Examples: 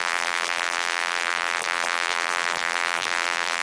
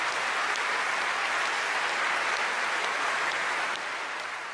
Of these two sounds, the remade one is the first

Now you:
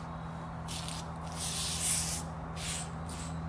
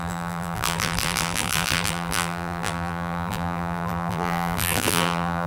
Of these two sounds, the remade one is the second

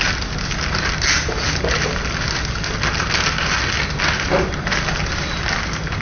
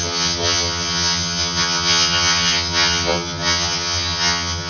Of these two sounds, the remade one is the second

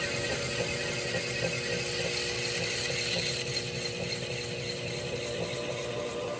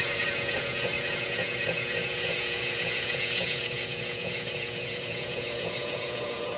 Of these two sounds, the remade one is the second